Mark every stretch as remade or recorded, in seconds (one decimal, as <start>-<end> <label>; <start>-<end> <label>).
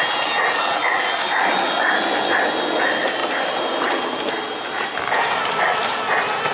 0.0-6.5 recorded